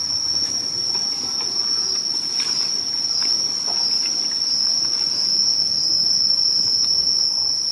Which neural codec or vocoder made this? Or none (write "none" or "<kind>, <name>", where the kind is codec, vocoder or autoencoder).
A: none